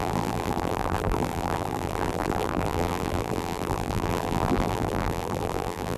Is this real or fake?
fake